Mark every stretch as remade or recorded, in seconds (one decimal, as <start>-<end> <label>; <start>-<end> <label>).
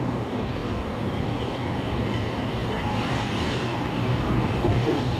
0.0-5.2 remade